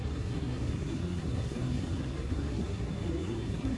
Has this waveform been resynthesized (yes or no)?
yes